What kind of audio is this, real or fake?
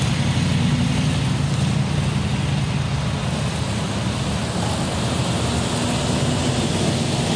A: real